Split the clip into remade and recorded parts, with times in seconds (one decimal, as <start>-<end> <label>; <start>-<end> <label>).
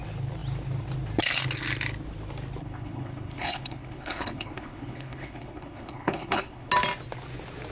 0.0-2.6 recorded; 2.6-6.7 remade; 6.7-7.7 recorded